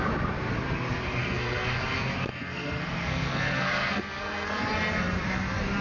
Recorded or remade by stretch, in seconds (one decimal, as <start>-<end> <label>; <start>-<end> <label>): 0.0-1.2 recorded; 1.2-1.8 remade; 1.8-2.3 recorded; 2.3-4.7 remade; 4.7-5.8 recorded